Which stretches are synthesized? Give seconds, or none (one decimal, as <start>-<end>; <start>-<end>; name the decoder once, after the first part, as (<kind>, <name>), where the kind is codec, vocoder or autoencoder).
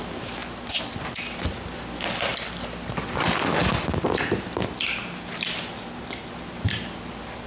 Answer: none